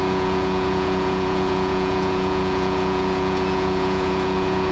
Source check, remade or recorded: remade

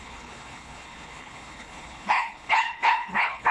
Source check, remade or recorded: remade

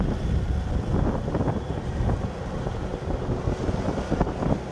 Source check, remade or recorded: recorded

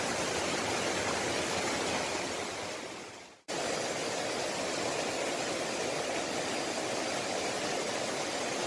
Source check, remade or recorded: recorded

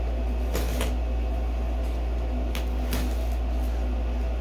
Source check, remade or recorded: recorded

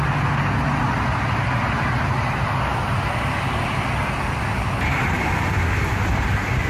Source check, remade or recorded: recorded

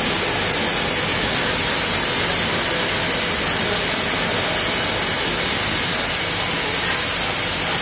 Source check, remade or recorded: recorded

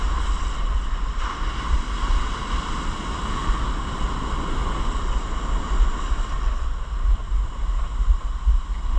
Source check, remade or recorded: recorded